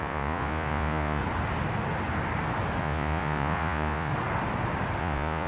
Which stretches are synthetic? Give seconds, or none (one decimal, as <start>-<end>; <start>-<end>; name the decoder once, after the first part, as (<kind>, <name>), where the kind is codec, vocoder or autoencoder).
0.0-1.2 (vocoder, Vocos); 2.8-4.1; 5.0-5.5